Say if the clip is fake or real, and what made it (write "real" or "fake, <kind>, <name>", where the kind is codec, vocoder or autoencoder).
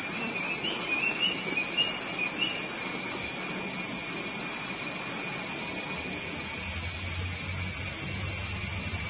real